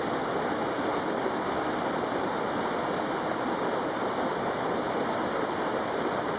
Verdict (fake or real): real